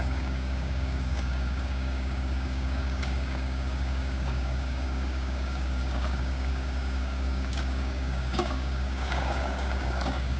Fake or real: fake